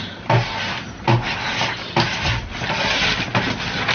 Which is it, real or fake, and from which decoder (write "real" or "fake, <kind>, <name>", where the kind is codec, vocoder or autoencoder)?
real